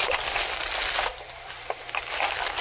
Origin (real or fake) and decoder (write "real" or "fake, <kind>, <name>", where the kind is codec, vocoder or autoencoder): real